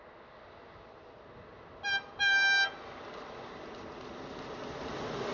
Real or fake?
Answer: real